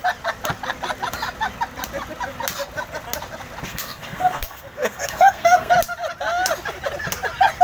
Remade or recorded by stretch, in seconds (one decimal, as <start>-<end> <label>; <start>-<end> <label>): 0.0-3.7 recorded; 3.7-5.7 remade; 5.7-7.6 recorded